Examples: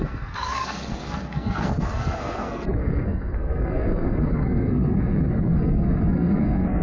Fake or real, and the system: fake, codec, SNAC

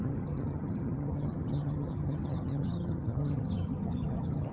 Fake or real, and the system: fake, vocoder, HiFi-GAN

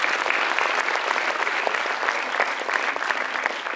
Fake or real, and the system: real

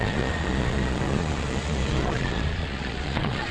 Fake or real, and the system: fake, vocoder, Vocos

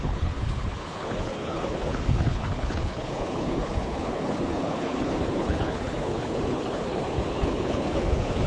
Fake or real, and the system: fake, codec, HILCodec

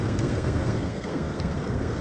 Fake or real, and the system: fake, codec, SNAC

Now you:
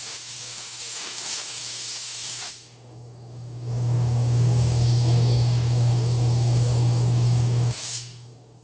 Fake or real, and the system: fake, codec, DAC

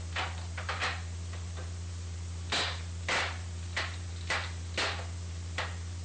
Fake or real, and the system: real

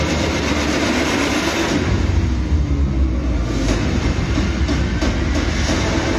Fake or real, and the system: real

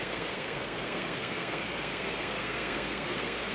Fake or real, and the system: fake, codec, SNAC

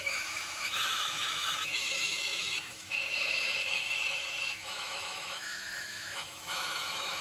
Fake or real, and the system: fake, autoencoder, DAC-VAE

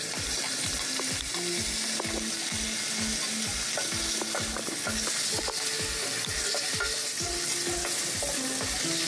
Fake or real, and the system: real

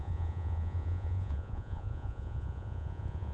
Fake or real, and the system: fake, vocoder, Vocos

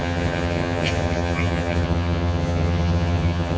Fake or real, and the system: fake, vocoder, HiFi-GAN